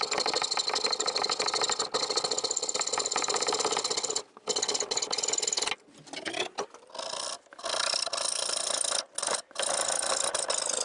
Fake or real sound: real